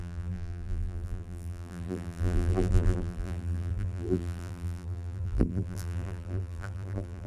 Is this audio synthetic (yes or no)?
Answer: yes